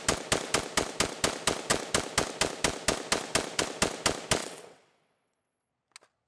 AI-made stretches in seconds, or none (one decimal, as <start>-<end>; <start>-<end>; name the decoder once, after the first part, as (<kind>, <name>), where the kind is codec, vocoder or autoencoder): 4.4-5.7 (vocoder, WaveNeXt)